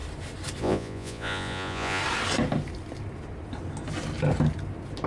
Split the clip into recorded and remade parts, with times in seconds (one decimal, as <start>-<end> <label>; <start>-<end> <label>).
0.0-0.6 recorded; 0.6-2.0 remade; 2.0-5.1 recorded